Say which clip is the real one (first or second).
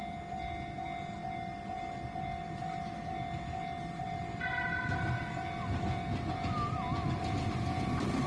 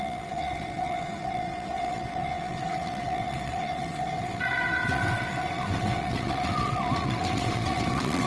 first